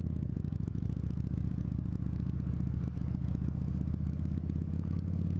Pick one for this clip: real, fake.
fake